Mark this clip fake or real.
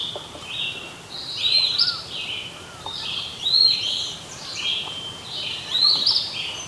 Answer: fake